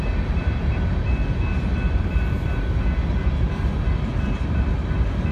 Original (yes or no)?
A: yes